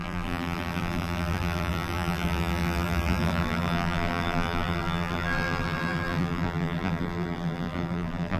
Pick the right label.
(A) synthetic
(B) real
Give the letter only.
A